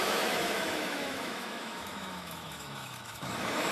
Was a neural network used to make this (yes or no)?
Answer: yes